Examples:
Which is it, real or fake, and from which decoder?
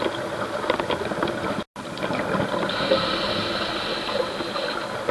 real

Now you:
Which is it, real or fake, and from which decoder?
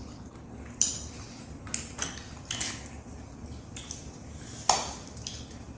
real